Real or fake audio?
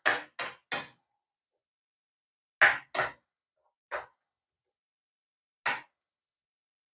real